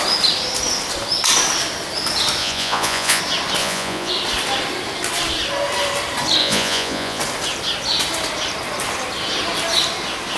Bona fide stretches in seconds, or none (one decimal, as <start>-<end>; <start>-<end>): 0.0-2.4; 3.2-3.6; 4.1-6.4; 7.2-10.4